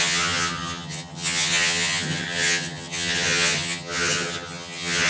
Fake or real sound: fake